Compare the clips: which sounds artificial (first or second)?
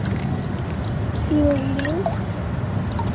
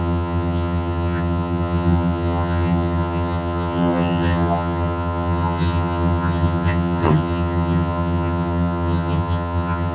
second